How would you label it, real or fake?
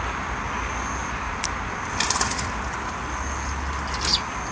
real